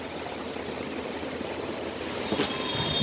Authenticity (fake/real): real